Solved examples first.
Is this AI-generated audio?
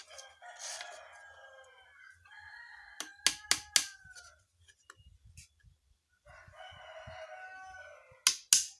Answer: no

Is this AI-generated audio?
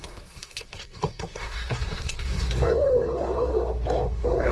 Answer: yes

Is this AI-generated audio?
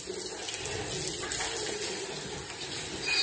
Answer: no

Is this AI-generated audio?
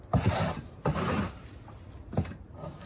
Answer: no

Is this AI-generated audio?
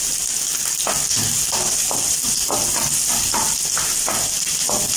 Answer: no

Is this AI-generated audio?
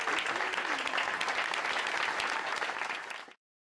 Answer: no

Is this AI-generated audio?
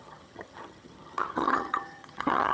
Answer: yes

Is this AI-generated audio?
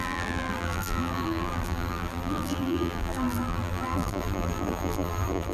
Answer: yes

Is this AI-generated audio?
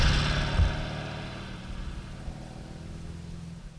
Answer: no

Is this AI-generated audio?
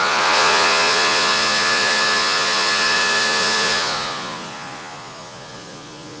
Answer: yes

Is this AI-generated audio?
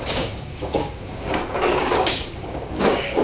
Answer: yes